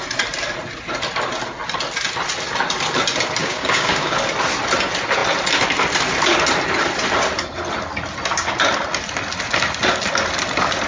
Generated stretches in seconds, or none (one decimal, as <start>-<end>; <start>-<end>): 3.4-4.1